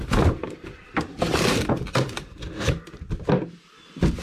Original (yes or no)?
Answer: no